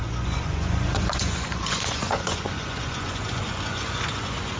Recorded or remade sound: remade